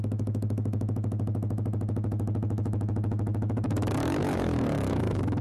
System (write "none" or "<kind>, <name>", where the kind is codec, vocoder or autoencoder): autoencoder, DAC-VAE